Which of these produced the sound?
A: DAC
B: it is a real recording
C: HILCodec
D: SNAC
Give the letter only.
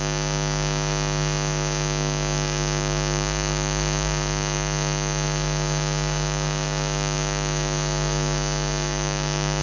A